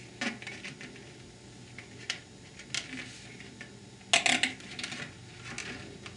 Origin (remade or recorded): recorded